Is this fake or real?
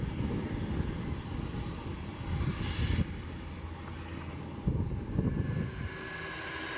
real